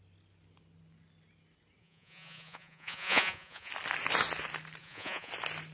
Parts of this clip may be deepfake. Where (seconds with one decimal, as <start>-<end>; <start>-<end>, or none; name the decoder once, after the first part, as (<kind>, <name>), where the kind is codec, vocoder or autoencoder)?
1.8-3.7 (vocoder, Vocos); 4.8-5.3